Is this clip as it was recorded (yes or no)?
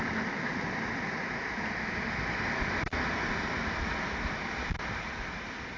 yes